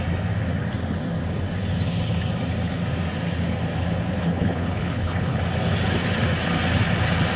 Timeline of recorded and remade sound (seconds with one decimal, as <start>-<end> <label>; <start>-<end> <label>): 0.0-4.2 recorded; 4.2-5.4 remade; 5.4-7.4 recorded